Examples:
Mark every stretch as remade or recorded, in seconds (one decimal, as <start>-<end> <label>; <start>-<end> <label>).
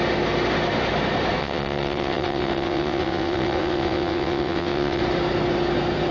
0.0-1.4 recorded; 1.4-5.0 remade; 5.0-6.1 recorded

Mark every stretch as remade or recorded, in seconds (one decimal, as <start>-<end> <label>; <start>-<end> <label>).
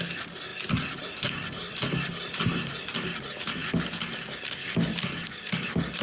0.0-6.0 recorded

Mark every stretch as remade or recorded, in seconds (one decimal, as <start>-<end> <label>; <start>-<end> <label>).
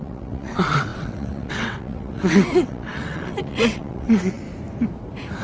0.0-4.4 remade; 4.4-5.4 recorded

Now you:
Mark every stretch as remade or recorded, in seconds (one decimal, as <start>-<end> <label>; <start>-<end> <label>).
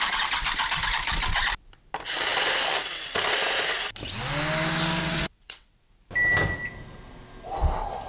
0.0-5.0 recorded; 5.0-5.9 remade; 5.9-8.1 recorded